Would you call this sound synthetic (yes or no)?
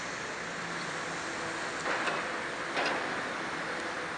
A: no